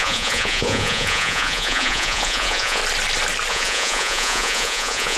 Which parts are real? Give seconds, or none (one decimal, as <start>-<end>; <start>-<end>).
2.8-3.5